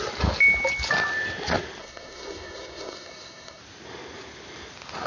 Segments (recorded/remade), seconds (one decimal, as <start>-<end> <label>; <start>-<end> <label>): 0.0-1.8 recorded; 1.8-3.6 remade; 3.6-5.1 recorded